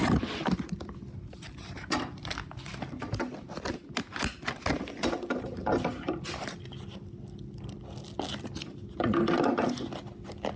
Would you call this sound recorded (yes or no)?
yes